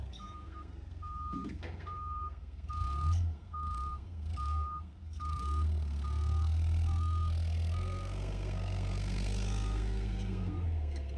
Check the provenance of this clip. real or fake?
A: fake